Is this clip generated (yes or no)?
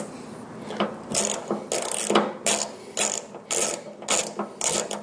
no